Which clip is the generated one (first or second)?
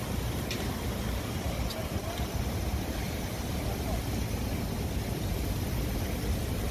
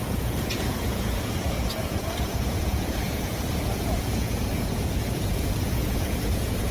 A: second